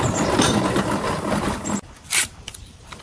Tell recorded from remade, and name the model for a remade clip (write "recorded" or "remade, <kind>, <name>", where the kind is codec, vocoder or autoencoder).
remade, vocoder, BigVGAN v2